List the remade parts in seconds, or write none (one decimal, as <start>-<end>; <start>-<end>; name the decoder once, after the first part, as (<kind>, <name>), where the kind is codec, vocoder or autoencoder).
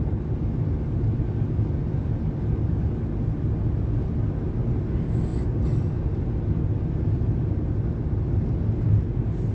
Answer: none